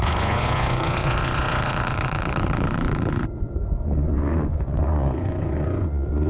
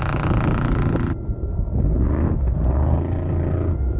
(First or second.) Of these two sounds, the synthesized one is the first